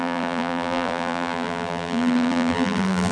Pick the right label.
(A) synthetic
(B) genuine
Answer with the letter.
A